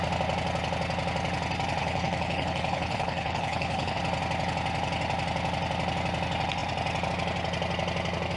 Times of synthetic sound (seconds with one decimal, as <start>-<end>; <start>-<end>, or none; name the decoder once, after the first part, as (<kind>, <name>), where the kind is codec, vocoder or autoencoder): 1.8-4.0 (codec, HILCodec)